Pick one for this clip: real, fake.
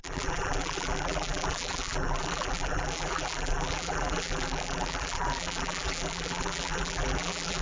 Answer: fake